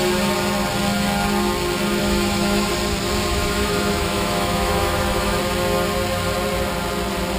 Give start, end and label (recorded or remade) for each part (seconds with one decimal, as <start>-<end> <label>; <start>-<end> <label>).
0.0-2.0 recorded; 2.0-2.7 remade; 2.7-3.3 recorded; 3.3-5.4 remade; 5.4-7.4 recorded